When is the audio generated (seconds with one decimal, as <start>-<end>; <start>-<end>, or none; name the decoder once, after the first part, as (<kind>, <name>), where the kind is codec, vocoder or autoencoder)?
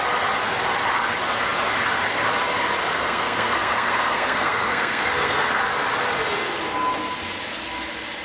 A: 2.9-5.6 (codec, SNAC)